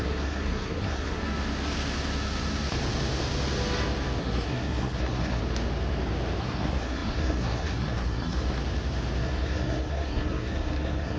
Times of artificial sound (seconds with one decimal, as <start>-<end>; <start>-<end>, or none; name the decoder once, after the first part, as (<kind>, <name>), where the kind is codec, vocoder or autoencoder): 0.0-1.2 (codec, SNAC); 4.2-5.4; 6.4-8.6; 9.2-11.2